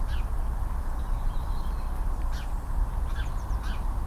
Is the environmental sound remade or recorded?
recorded